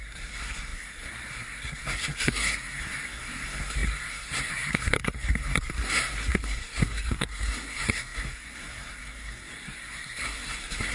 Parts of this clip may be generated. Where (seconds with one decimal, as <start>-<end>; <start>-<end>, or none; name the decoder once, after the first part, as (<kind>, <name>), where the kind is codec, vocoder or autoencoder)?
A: 0.0-10.9 (codec, SNAC)